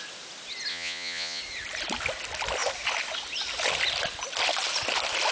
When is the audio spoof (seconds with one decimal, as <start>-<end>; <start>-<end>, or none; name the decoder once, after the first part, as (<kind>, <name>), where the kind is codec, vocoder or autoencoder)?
0.7-1.4 (vocoder, Vocos)